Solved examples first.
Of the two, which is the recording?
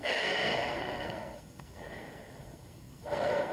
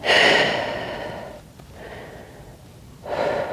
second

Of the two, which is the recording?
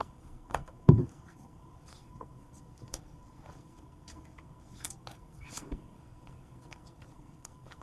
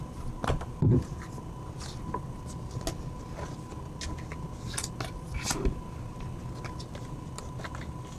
second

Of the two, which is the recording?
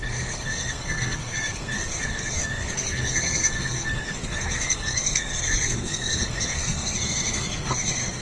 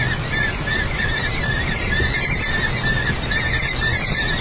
second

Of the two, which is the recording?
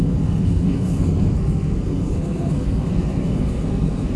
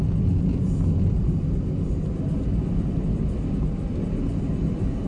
second